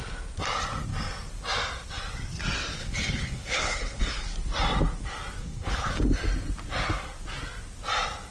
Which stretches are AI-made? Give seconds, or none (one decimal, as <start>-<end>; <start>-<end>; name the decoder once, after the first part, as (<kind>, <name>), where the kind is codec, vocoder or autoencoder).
2.8-4.0 (codec, HILCodec); 5.4-5.9